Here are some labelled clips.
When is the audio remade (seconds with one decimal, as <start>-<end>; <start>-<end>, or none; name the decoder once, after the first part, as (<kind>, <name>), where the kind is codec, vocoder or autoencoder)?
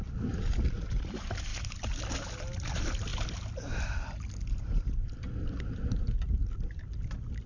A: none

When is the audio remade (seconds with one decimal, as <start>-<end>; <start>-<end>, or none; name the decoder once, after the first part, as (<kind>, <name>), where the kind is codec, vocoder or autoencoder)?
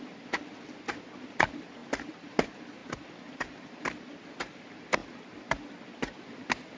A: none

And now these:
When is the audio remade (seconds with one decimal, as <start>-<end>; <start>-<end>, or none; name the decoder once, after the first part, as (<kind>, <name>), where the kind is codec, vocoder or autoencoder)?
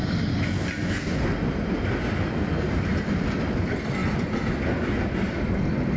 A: none